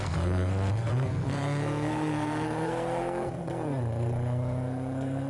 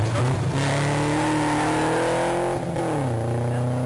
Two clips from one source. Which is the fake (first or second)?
first